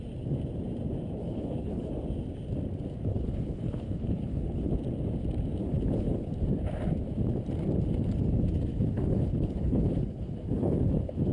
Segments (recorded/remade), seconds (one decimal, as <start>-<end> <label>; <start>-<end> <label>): 0.0-1.2 recorded; 1.2-1.9 remade; 1.9-3.1 recorded; 3.1-4.7 remade; 4.7-5.6 recorded; 5.6-6.3 remade; 6.3-8.7 recorded; 8.7-11.3 remade